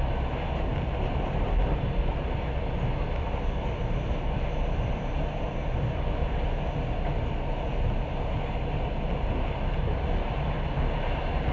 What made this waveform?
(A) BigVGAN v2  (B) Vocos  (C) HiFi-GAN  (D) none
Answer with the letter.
D